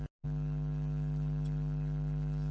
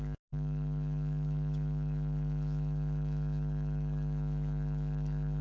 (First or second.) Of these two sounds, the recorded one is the first